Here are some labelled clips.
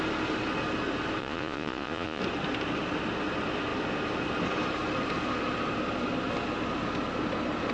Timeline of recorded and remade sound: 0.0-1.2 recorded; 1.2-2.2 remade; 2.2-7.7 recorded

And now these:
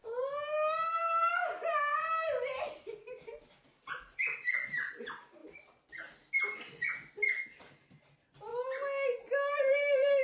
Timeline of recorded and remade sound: 0.0-0.9 recorded; 0.9-1.5 remade; 1.5-2.9 recorded; 2.9-5.4 remade; 5.4-8.0 recorded; 8.0-8.5 remade; 8.5-9.5 recorded; 9.5-10.2 remade

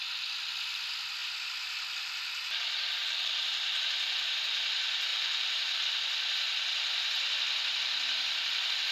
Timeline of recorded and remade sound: 0.0-3.0 recorded; 3.0-4.4 remade; 4.4-5.1 recorded; 5.1-5.8 remade; 5.8-8.9 recorded

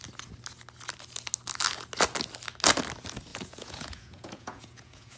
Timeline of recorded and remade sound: 0.0-3.3 recorded; 3.3-5.2 remade